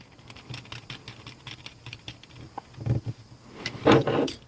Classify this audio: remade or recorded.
recorded